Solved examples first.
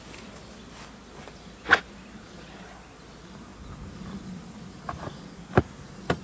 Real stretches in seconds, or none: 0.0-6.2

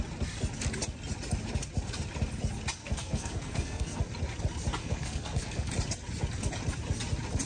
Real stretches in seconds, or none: 0.0-2.8; 4.0-4.8; 5.7-7.5

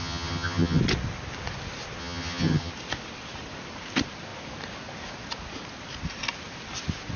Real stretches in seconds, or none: 0.8-2.0; 2.7-7.2

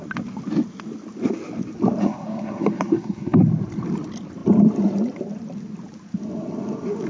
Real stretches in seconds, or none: 0.0-2.0; 3.4-7.1

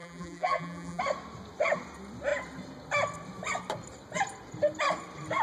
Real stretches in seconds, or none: 1.0-5.4